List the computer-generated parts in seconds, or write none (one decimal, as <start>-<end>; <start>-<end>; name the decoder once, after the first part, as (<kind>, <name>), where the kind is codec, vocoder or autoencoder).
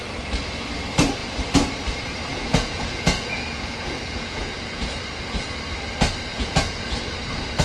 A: 2.3-4.9 (vocoder, Vocos); 6.3-6.9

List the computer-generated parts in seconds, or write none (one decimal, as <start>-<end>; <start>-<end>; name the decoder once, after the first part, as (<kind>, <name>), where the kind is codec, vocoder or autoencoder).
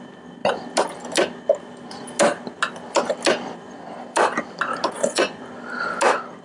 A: 5.0-5.5 (vocoder, Vocos)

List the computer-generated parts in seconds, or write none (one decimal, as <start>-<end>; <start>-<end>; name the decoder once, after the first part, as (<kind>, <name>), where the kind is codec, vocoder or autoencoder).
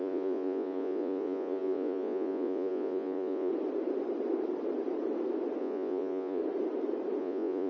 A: 0.0-3.5 (vocoder, Vocos); 5.6-6.4; 7.2-7.7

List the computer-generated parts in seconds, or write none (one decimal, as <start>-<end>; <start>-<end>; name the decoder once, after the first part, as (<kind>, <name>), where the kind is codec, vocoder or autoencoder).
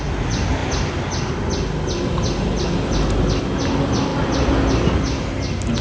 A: none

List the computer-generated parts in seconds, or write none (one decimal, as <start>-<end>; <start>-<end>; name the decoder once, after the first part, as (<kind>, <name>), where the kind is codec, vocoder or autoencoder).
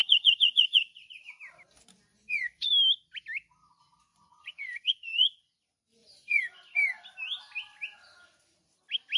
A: 0.0-1.3 (vocoder, Vocos); 2.1-2.7; 4.1-5.5; 6.0-7.0